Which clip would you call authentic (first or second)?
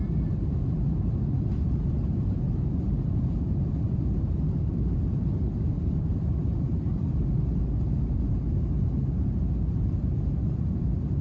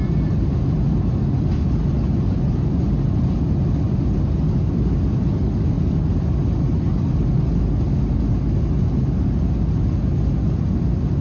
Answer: second